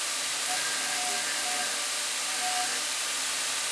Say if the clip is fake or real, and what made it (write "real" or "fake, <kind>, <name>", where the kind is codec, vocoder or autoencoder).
real